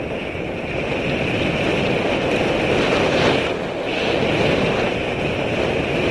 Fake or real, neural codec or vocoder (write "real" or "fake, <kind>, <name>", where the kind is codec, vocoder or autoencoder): real